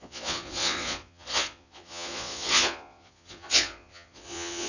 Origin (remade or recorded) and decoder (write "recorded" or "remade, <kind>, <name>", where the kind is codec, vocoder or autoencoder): remade, vocoder, Vocos